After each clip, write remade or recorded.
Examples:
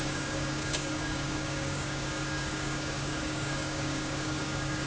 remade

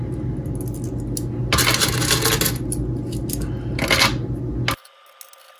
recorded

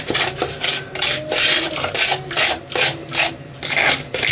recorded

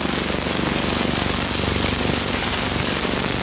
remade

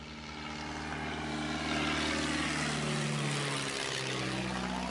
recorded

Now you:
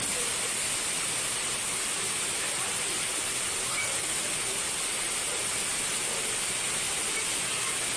recorded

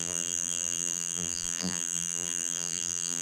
remade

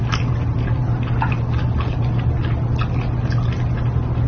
recorded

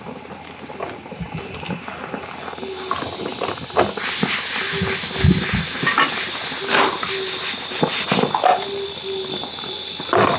recorded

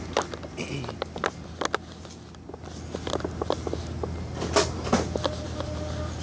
recorded